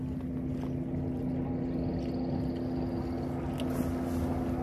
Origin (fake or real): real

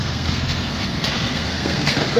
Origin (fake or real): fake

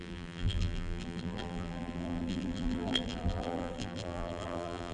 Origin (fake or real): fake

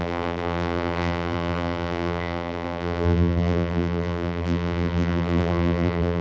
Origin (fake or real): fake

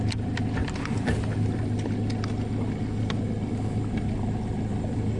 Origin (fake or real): real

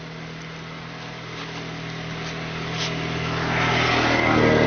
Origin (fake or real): real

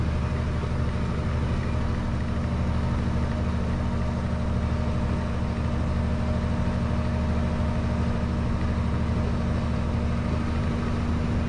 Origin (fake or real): real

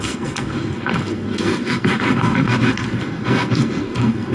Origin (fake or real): fake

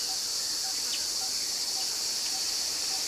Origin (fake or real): real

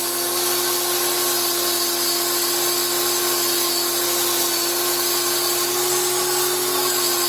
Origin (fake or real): real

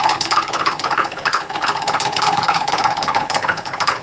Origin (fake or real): fake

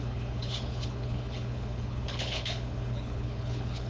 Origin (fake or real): fake